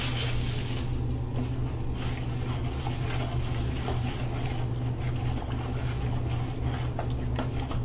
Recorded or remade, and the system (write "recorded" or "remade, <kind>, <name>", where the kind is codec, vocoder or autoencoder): recorded